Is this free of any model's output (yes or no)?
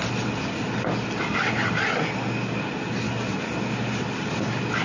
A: yes